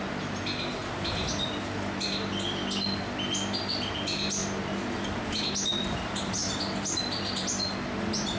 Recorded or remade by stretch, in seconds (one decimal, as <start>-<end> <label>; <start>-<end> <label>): 0.0-8.4 recorded